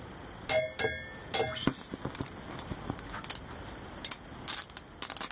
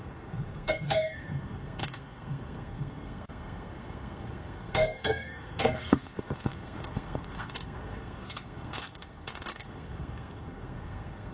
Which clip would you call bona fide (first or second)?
first